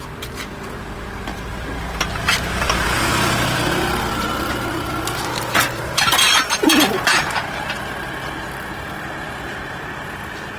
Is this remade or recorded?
recorded